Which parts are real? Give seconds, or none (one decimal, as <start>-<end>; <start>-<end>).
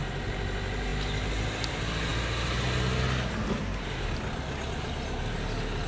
0.0-5.9